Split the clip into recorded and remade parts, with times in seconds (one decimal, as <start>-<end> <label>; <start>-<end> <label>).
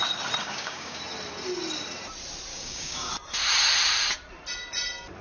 0.0-0.4 recorded; 0.4-1.0 remade; 1.0-2.5 recorded; 2.5-3.1 remade; 3.1-5.2 recorded